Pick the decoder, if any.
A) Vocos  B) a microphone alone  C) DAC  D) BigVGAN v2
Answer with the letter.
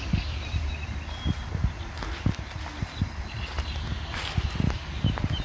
B